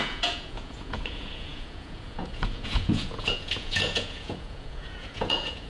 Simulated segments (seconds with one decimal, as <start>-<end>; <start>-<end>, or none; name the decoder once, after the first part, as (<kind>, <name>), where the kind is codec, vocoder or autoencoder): 0.0-5.7 (vocoder, Vocos)

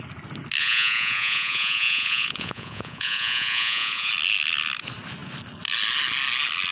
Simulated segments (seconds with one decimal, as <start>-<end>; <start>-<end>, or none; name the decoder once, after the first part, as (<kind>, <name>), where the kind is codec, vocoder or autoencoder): 0.6-4.1 (vocoder, Vocos)

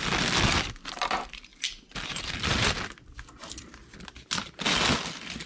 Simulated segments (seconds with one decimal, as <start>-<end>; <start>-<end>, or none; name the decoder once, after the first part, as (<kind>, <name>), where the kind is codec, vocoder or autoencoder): none

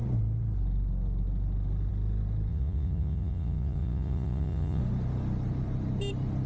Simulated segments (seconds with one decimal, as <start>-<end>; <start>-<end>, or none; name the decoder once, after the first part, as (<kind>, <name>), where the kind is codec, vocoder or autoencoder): 2.5-4.8 (vocoder, Vocos)

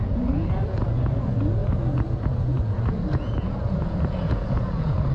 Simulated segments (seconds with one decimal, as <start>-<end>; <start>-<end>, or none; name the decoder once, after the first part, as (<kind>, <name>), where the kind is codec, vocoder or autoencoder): 0.0-5.1 (vocoder, Vocos)

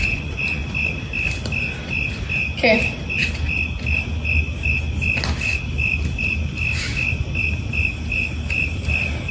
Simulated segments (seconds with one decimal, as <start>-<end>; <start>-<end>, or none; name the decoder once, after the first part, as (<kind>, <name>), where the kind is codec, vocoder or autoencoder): 0.0-0.6 (vocoder, Vocos)